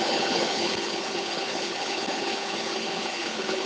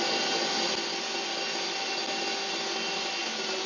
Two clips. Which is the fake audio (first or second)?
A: first